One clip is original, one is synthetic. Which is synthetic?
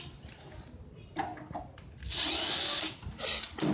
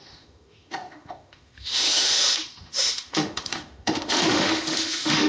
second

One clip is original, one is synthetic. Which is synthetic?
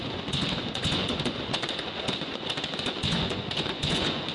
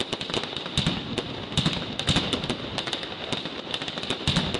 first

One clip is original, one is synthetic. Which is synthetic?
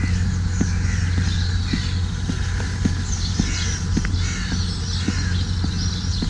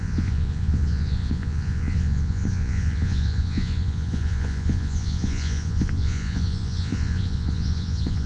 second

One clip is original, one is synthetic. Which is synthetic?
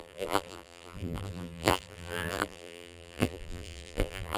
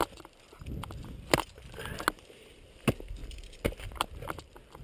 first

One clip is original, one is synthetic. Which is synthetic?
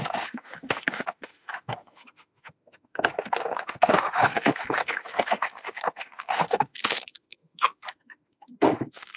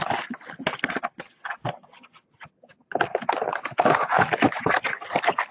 first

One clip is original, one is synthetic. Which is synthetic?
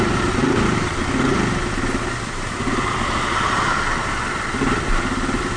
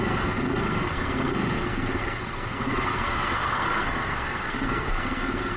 second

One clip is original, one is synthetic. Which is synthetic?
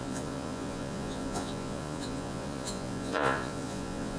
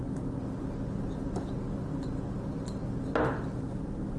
first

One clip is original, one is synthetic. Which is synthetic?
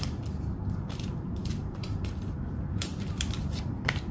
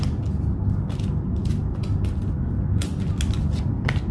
first